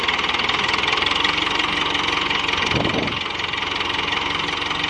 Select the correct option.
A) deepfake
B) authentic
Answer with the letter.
B